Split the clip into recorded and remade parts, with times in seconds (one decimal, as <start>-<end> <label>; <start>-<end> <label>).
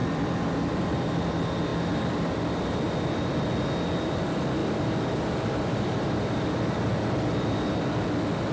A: 0.0-1.1 remade; 1.1-1.7 recorded; 1.7-3.5 remade; 3.5-4.6 recorded; 4.6-6.8 remade; 6.8-8.5 recorded